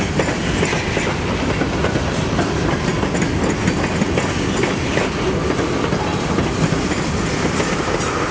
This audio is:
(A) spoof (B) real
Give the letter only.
B